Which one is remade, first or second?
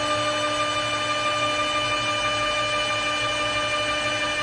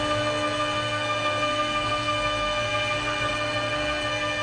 second